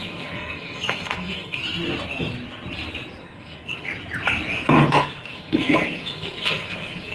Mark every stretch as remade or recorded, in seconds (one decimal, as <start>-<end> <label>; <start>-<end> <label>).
0.0-1.6 remade; 1.6-3.2 recorded; 3.2-3.9 remade; 3.9-4.9 recorded; 4.9-7.1 remade